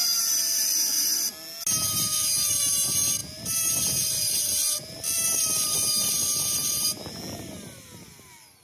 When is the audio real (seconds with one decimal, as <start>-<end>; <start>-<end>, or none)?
0.0-3.2; 7.2-8.6